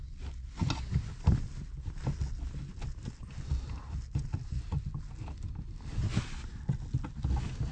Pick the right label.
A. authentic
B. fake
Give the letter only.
A